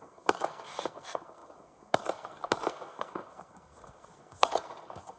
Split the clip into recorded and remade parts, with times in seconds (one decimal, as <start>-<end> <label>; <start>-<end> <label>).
0.0-5.2 remade